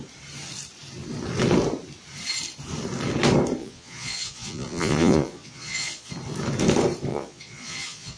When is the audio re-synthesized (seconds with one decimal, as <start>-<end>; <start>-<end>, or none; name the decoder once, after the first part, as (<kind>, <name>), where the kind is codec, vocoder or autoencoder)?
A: 3.6-6.1 (vocoder, Vocos); 7.1-8.2